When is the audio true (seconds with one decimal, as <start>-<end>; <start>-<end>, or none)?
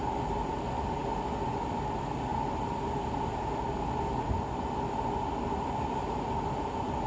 0.0-7.1